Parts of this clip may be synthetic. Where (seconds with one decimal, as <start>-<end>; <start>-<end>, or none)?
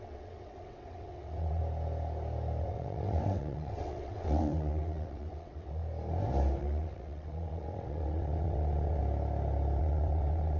0.0-1.6; 2.6-5.8; 6.6-9.0; 9.8-10.6